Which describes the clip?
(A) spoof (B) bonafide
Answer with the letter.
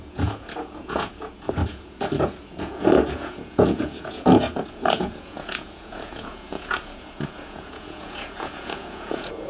A